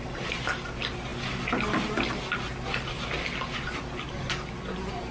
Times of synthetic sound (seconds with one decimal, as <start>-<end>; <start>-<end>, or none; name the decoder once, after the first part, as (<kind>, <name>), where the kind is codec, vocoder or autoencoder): none